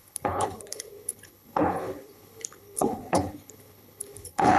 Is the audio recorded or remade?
remade